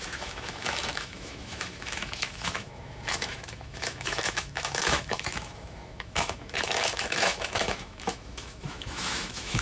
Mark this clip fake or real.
fake